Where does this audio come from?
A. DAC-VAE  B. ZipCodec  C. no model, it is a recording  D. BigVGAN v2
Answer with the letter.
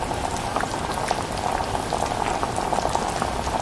C